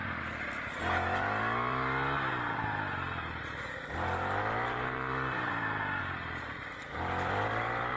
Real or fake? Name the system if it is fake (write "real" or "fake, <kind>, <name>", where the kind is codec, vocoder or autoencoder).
real